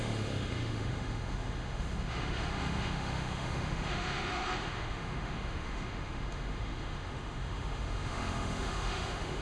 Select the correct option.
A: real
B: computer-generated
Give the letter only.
B